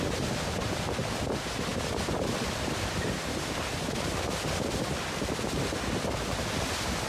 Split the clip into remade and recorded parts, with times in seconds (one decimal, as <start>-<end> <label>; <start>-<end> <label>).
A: 0.0-7.1 recorded